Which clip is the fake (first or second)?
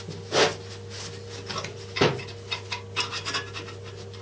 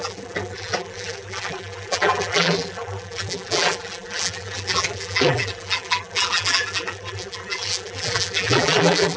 second